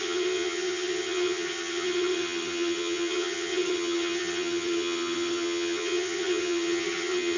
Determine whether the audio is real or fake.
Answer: fake